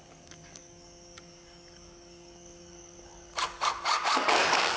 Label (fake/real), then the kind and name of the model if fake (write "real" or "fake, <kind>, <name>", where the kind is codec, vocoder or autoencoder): fake, codec, DAC